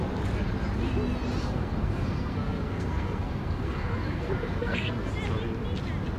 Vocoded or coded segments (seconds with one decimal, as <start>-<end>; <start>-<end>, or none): 1.4-5.1